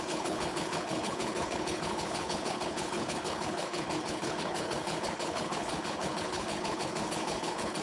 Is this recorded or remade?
remade